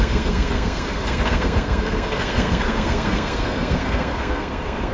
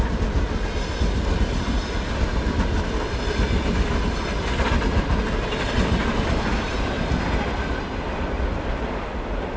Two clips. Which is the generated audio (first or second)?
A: first